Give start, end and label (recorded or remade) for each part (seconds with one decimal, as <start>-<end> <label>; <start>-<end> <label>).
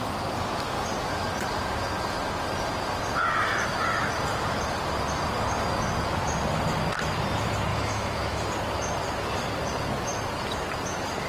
0.0-7.7 recorded; 7.7-8.5 remade; 8.5-11.3 recorded